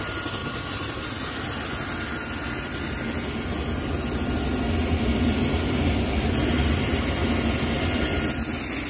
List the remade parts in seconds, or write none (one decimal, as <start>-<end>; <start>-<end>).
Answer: none